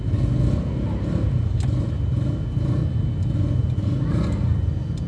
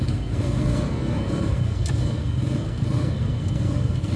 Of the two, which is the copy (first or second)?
second